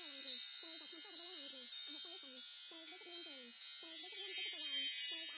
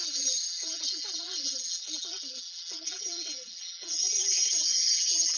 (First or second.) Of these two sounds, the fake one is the second